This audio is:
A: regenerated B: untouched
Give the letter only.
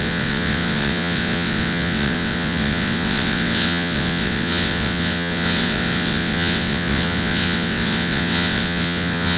A